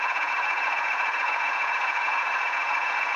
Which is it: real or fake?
fake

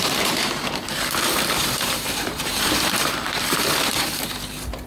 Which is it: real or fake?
fake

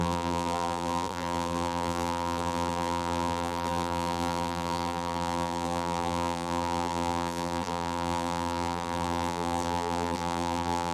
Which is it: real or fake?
fake